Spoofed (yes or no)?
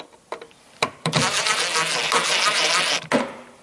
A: no